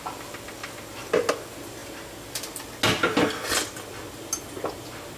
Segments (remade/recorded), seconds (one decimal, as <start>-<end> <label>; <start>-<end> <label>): 0.0-5.2 recorded